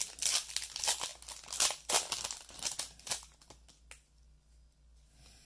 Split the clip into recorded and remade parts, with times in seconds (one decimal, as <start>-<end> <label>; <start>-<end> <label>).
0.0-5.4 recorded